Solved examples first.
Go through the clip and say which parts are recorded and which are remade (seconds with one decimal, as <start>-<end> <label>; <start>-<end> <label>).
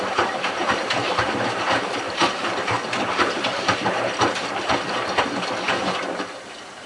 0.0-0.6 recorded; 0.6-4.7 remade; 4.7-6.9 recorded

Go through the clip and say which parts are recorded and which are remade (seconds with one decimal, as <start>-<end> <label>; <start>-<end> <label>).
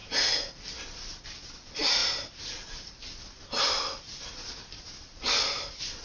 0.0-1.5 recorded; 1.5-2.0 remade; 2.0-3.6 recorded; 3.6-6.0 remade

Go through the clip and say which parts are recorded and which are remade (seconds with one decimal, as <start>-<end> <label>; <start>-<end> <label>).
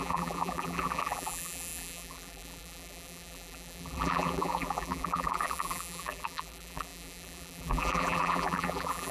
0.0-9.1 remade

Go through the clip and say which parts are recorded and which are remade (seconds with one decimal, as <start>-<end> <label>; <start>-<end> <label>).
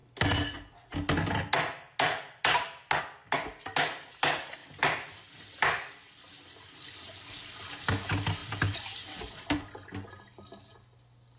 0.0-8.4 recorded; 8.4-9.6 remade; 9.6-11.4 recorded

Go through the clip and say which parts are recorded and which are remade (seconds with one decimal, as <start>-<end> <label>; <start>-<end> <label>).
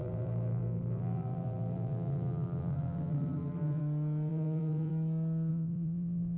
0.0-3.8 remade; 3.8-4.3 recorded; 4.3-4.9 remade; 4.9-5.5 recorded; 5.5-6.4 remade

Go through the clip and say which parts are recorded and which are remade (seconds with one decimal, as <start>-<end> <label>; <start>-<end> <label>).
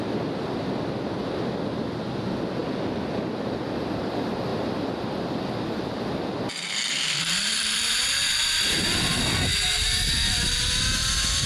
0.0-2.6 recorded; 2.6-3.2 remade; 3.2-4.5 recorded; 4.5-8.1 remade; 8.1-11.5 recorded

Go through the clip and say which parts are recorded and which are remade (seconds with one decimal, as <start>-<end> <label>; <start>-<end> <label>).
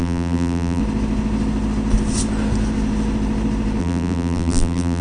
0.0-0.8 remade; 0.8-3.8 recorded; 3.8-5.0 remade